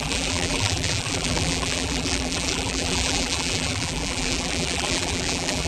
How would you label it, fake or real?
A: fake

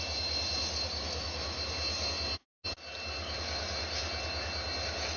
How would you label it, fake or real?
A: real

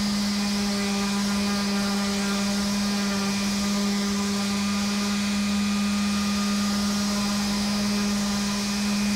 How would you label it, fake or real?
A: real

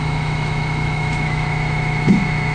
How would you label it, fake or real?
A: fake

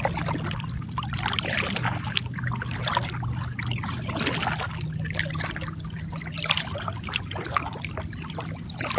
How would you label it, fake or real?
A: real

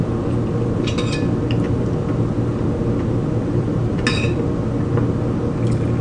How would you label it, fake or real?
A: real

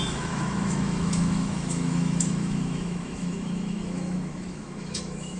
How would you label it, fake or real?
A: fake